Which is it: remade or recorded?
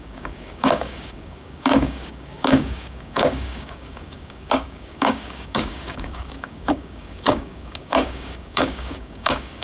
remade